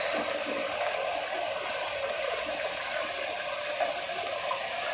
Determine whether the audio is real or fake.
real